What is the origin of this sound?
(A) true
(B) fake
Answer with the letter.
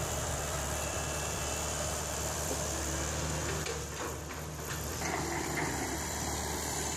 B